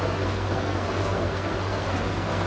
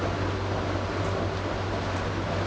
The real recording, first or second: second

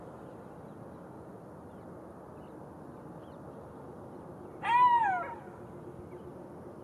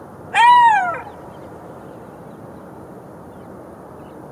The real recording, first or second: first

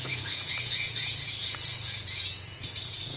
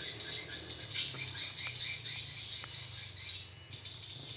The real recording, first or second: second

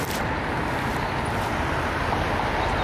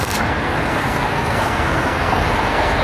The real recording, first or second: first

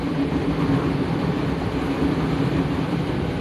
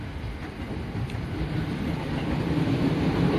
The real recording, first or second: first